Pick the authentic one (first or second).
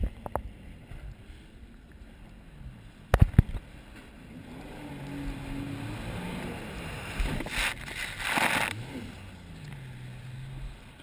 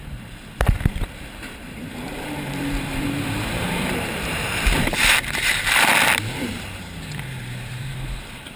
first